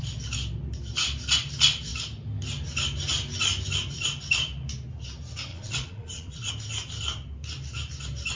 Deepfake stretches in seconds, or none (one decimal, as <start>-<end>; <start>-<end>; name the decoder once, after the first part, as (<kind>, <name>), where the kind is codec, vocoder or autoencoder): 5.5-6.5 (vocoder, Vocos)